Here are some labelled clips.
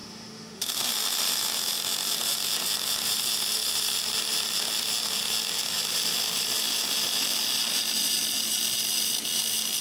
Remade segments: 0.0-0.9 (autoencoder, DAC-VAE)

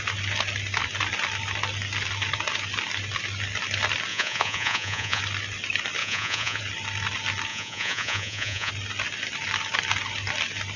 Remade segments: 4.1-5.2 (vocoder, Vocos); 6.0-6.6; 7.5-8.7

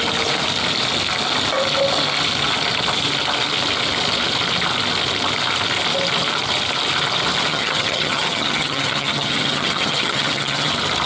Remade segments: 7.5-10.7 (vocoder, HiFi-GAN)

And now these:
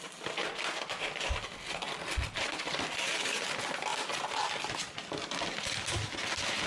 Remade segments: none